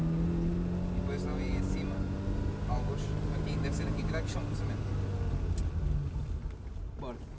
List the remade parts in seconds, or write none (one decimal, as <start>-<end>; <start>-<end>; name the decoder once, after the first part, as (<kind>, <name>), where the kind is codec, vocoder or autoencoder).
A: none